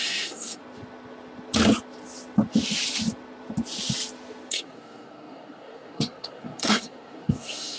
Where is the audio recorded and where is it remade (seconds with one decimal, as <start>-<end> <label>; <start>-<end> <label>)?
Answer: 0.0-0.6 remade; 0.6-4.5 recorded; 4.5-7.8 remade